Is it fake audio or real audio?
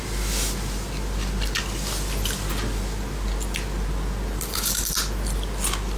real